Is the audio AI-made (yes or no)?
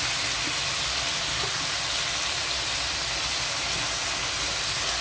no